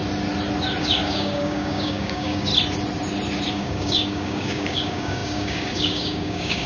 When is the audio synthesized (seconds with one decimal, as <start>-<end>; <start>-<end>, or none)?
0.8-2.5; 3.5-6.7

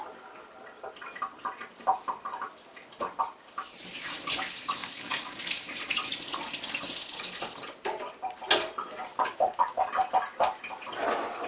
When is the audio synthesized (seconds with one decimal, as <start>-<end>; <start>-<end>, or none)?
4.8-5.4; 9.1-9.9

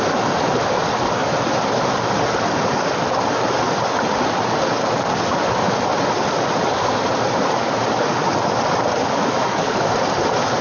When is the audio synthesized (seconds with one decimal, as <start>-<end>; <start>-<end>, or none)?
9.0-9.9

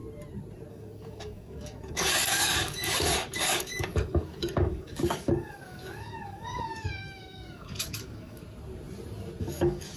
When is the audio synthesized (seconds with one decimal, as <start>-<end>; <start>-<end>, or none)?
0.7-8.4; 9.4-10.0

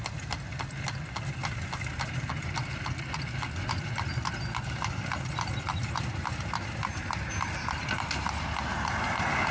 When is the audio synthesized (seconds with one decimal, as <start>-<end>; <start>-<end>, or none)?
none